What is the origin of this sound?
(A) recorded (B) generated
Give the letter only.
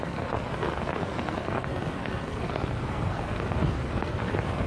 B